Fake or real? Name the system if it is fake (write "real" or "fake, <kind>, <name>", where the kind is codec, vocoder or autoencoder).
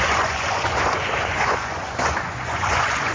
fake, vocoder, Vocos